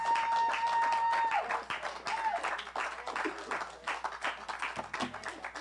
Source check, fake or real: real